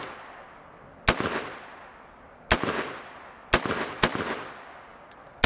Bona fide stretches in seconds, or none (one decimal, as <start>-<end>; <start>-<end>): 0.0-5.5